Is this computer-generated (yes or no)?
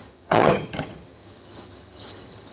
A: yes